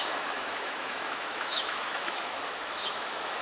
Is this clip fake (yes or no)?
yes